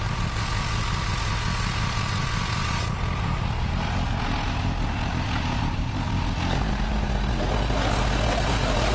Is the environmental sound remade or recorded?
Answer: recorded